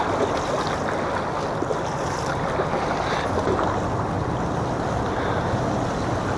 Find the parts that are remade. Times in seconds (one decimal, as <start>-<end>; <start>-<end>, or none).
none